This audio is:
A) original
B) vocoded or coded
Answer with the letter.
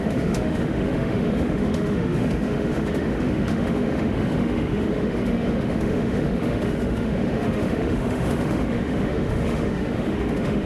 B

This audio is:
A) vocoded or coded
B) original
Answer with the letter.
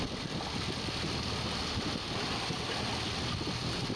B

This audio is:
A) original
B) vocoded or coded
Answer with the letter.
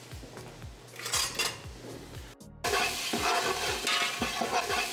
A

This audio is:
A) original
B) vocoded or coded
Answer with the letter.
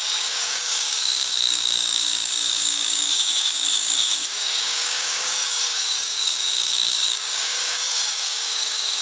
B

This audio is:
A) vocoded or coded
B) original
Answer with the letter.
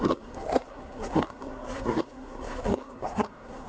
A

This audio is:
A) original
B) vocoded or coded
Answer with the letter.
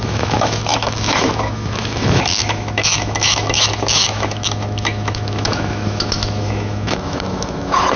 B